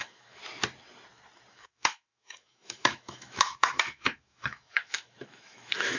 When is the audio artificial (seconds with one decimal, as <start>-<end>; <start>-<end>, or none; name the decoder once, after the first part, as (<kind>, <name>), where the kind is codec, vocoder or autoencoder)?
0.0-0.4 (autoencoder, DAC-VAE); 1.5-6.0